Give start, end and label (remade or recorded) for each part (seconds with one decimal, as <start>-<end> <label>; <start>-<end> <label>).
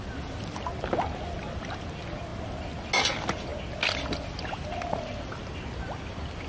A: 0.0-6.5 recorded